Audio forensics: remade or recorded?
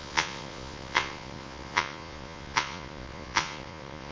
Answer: remade